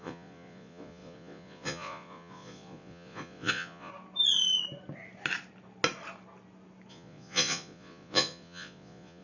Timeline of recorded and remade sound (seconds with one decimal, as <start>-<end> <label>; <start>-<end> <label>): 0.0-3.9 remade; 3.9-6.9 recorded; 6.9-9.2 remade